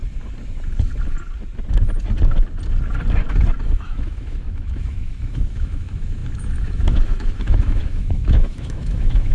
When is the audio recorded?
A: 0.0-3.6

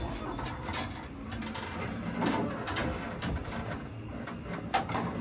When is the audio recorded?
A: 0.0-5.2

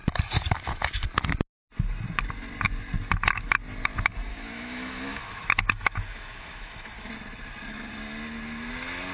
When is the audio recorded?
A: 0.0-4.3; 7.1-9.1

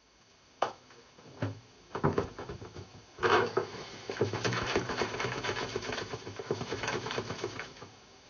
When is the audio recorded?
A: none

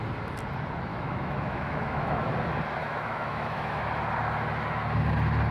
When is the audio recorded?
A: 0.0-0.9; 2.3-2.8; 3.8-5.5

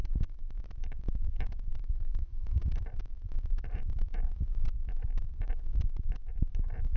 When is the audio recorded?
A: 0.6-1.7; 2.6-7.0

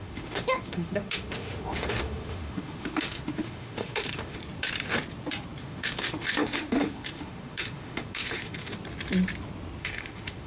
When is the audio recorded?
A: 4.4-5.6; 8.8-9.8

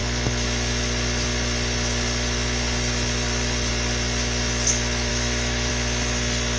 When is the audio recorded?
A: 0.0-5.1; 5.7-6.6